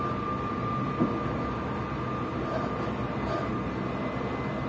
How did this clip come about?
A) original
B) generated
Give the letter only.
A